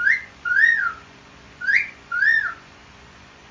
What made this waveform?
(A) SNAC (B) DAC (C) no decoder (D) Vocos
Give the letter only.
D